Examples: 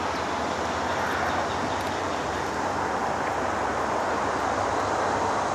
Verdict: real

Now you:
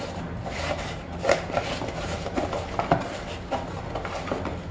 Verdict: real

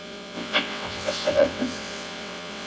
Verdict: fake